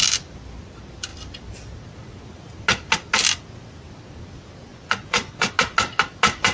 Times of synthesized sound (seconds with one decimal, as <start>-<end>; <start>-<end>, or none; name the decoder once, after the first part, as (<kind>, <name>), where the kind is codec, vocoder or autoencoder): 4.7-5.5 (vocoder, Vocos)